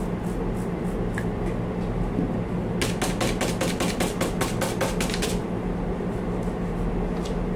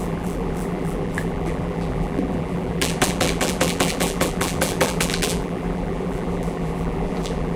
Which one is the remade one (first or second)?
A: second